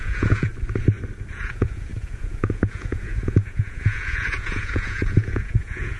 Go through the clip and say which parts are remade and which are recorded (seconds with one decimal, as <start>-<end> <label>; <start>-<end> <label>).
0.0-0.5 remade; 0.5-1.3 recorded; 1.3-6.0 remade